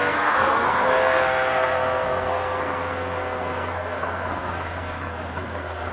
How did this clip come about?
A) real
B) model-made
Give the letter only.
B